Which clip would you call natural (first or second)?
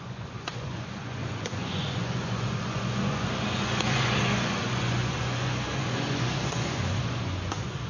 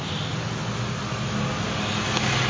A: second